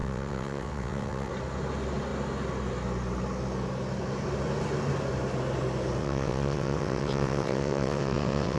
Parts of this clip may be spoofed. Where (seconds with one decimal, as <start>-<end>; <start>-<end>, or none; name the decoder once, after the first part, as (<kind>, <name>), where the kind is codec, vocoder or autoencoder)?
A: 0.0-1.3 (vocoder, WaveNeXt); 6.0-8.6